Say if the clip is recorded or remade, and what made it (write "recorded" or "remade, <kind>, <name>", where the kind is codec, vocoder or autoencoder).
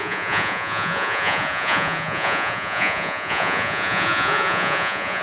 remade, vocoder, Vocos